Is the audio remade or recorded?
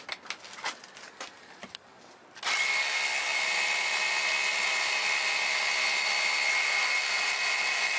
recorded